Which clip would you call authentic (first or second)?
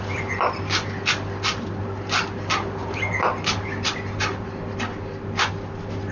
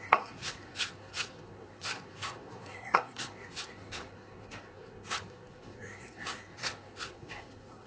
first